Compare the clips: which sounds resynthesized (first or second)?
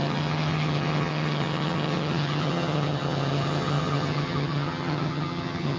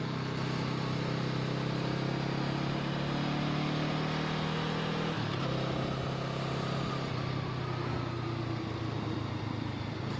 first